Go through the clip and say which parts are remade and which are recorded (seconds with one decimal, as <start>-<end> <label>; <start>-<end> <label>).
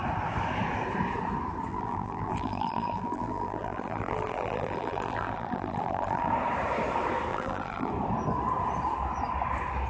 0.0-1.7 recorded; 1.7-6.3 remade; 6.3-7.3 recorded; 7.3-7.9 remade; 7.9-9.9 recorded